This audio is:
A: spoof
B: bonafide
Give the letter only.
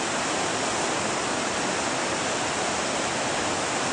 B